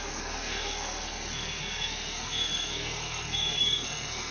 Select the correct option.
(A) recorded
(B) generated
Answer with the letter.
B